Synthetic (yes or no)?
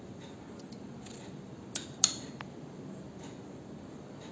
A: no